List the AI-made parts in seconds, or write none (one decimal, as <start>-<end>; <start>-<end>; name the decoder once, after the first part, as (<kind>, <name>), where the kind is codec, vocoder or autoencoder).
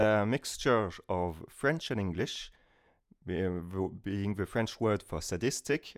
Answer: 2.2-6.0 (vocoder, Vocos)